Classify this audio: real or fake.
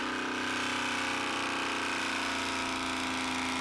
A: fake